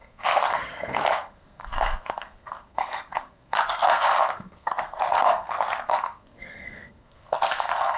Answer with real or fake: fake